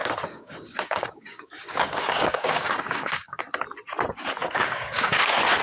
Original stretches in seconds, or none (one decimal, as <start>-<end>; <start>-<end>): 3.4-4.4

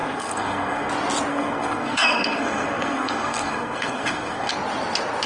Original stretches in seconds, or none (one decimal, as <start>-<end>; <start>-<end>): 0.9-1.3; 4.5-5.3

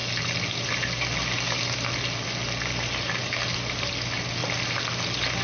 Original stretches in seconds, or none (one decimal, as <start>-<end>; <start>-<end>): 0.0-5.4